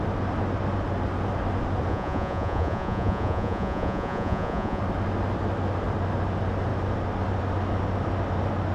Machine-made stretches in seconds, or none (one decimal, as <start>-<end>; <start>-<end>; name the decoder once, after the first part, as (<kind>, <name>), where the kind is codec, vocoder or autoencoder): 1.9-4.8 (vocoder, Vocos)